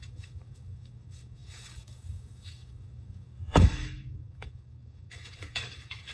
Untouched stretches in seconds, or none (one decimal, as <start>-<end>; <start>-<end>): none

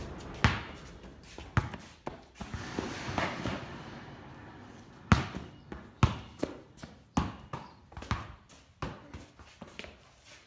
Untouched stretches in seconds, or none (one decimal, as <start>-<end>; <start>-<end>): 0.0-10.5